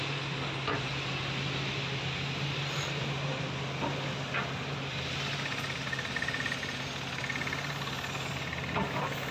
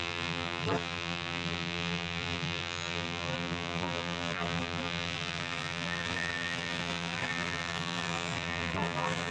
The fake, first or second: second